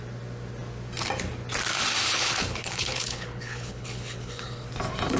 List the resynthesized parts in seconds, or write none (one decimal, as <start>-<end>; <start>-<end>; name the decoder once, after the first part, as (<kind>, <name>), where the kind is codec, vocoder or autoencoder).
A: 2.0-4.7 (codec, HILCodec)